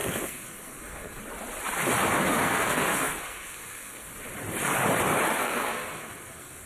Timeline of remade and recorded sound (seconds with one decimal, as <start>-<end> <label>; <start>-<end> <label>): 0.0-1.2 remade; 1.2-2.3 recorded; 2.3-4.1 remade; 4.1-5.4 recorded; 5.4-6.7 remade